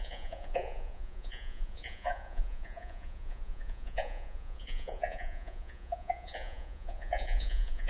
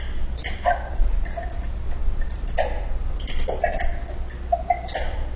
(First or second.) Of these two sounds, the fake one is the first